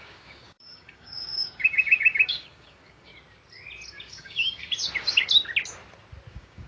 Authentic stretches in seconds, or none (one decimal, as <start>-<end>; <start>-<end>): 3.1-3.9; 4.6-6.3